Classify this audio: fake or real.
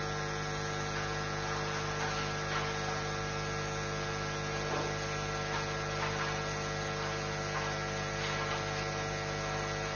real